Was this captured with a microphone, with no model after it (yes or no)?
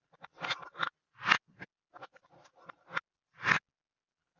yes